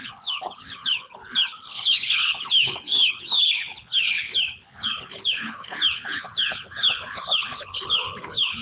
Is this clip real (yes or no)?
no